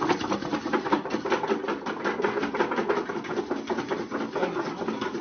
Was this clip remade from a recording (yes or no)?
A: no